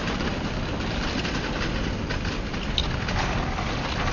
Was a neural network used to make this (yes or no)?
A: no